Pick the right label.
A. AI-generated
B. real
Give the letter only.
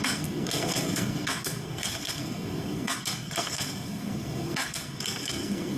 A